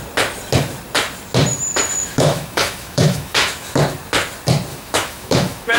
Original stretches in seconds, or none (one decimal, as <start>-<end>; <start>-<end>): 0.0-2.0; 3.8-4.7